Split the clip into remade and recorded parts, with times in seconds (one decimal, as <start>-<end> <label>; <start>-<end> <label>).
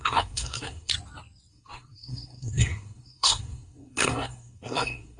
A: 0.0-0.9 remade; 0.9-1.5 recorded; 1.5-5.2 remade